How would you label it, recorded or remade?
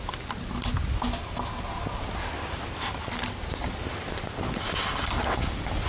recorded